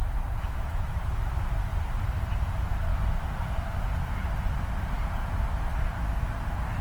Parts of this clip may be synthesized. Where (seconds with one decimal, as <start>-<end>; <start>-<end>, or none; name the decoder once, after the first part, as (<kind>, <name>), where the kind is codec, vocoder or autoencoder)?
0.0-1.2 (vocoder, BigVGAN v2); 1.7-2.2